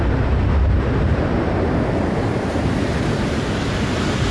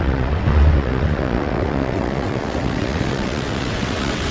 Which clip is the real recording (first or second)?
first